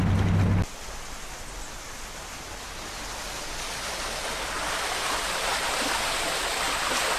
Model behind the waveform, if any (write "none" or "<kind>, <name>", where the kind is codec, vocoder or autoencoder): none